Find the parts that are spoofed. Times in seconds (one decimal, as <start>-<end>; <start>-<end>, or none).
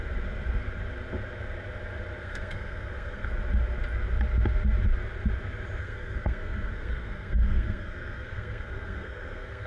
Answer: 2.2-3.3; 5.8-9.7